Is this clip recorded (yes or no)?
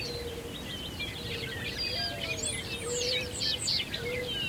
no